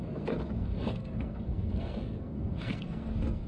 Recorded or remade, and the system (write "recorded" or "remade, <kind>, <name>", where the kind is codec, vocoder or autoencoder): remade, codec, SNAC